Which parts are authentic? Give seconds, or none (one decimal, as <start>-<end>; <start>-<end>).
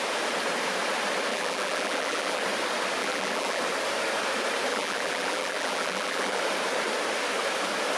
0.0-1.3; 2.4-3.0; 3.6-4.7; 6.4-8.0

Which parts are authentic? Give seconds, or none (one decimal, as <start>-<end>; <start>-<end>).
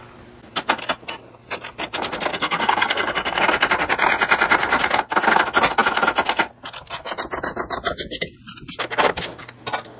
0.0-2.3; 3.4-10.0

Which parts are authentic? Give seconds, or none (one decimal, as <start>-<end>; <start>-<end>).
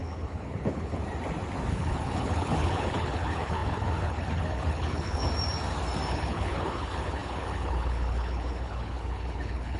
1.0-1.7; 5.2-6.1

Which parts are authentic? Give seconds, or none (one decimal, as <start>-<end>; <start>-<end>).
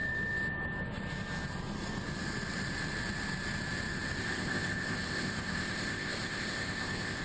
0.0-4.2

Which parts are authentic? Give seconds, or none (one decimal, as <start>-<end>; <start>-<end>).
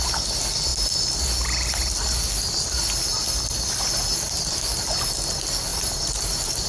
0.0-5.7